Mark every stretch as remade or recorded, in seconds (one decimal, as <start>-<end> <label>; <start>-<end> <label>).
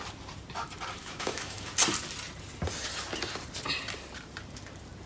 0.0-1.0 recorded; 1.0-1.7 remade; 1.7-5.1 recorded